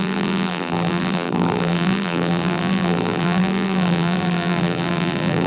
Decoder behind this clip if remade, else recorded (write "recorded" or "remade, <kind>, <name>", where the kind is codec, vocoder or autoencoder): remade, vocoder, BigVGAN v2